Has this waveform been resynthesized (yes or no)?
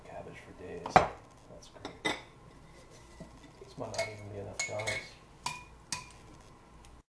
no